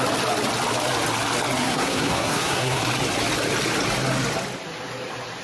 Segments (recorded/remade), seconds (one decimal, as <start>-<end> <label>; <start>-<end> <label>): 0.0-1.6 recorded; 1.6-2.8 remade; 2.8-5.4 recorded